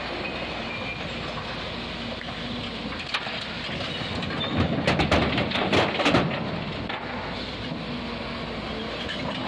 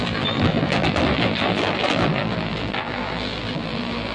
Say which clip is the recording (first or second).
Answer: first